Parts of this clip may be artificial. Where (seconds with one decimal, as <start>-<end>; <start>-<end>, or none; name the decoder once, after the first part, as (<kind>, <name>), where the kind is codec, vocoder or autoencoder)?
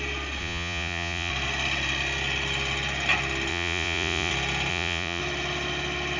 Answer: 0.4-1.3 (vocoder, Vocos); 3.5-4.3; 4.7-5.2